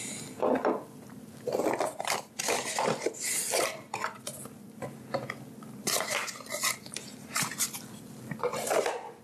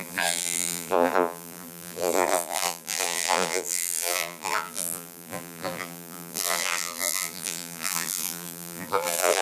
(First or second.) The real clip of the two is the first